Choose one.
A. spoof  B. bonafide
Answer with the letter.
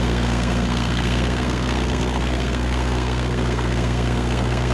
A